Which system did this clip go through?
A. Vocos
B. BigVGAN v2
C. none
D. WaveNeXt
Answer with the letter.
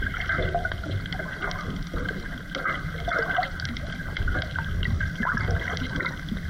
C